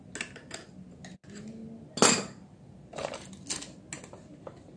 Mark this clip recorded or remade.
recorded